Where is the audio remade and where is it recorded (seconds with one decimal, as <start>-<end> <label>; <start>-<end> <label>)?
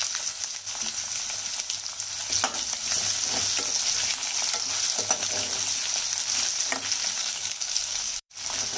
0.0-7.2 recorded; 7.2-8.3 remade; 8.3-8.8 recorded